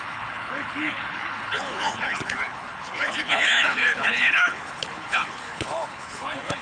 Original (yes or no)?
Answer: no